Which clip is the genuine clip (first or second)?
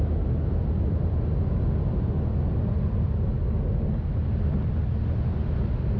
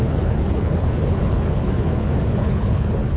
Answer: first